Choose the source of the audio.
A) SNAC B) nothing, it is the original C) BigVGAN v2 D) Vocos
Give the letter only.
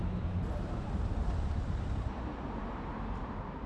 C